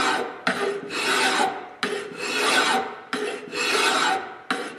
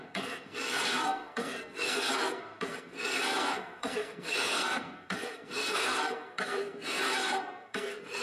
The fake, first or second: second